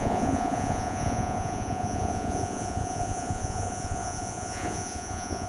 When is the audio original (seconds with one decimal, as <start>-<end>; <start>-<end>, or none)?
none